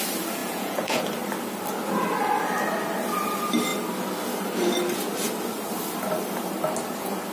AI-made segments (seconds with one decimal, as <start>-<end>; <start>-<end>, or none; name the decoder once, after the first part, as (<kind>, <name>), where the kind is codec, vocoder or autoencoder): 0.4-1.0 (vocoder, Vocos)